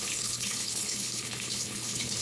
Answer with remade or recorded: remade